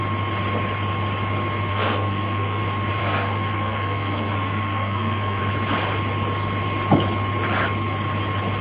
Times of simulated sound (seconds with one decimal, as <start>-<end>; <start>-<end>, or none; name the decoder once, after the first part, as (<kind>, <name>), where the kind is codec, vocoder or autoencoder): 1.7-2.6 (codec, SNAC); 3.0-5.4